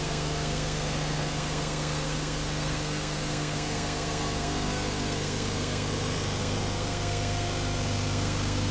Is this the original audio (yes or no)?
no